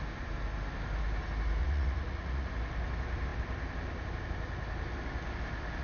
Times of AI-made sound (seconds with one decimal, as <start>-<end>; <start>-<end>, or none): 1.6-2.5